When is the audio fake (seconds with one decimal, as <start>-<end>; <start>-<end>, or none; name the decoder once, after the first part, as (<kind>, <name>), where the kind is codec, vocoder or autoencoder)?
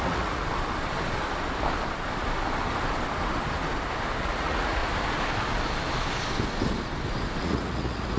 0.0-0.4 (vocoder, Vocos); 4.2-4.8; 7.4-8.2